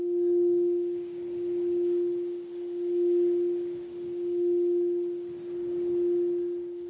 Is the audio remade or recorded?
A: recorded